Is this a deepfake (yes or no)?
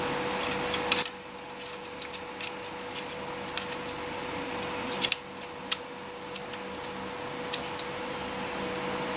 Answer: no